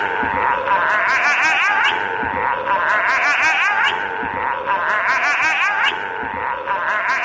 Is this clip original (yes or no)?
yes